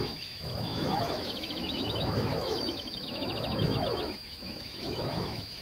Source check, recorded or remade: remade